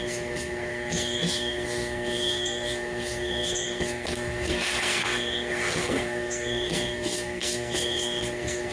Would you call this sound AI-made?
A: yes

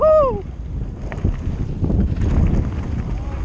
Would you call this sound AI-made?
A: no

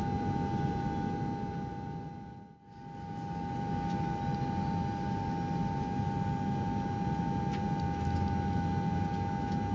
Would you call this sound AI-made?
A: no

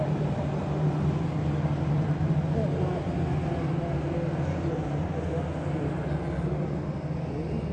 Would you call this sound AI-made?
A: no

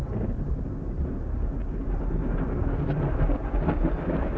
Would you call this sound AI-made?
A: no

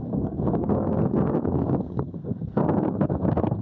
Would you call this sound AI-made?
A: yes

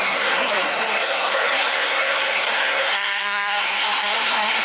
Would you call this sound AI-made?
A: yes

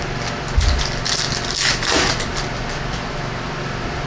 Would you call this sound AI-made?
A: no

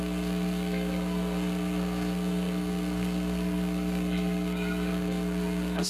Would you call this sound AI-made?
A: yes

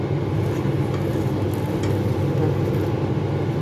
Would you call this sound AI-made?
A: no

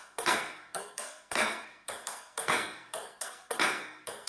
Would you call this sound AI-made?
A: yes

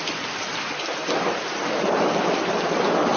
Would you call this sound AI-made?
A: no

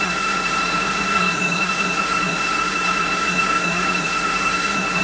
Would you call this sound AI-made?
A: yes